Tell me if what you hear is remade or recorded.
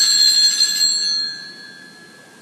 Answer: recorded